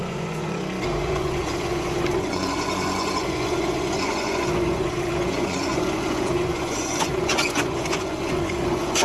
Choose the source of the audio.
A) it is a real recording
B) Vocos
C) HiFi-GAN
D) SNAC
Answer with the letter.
B